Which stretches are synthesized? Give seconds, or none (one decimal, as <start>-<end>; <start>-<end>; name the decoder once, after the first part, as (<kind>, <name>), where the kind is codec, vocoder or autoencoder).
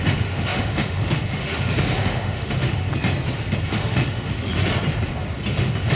0.0-2.9 (autoencoder, DAC-VAE); 3.7-4.5; 5.5-6.0